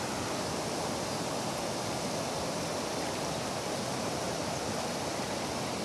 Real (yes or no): yes